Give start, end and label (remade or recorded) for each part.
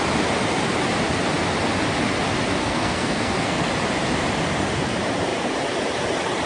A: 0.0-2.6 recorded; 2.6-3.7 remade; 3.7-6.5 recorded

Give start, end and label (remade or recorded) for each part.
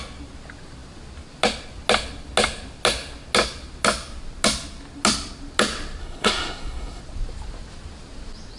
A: 0.0-6.0 recorded; 6.0-7.0 remade; 7.0-8.6 recorded